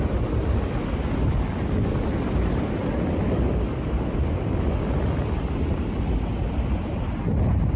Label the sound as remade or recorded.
recorded